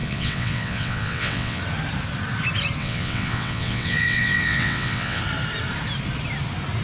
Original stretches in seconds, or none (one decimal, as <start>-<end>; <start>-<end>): 1.6-2.8; 5.2-6.8